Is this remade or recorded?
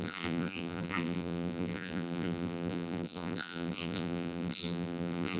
remade